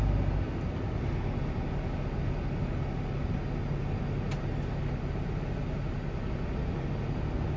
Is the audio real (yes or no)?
yes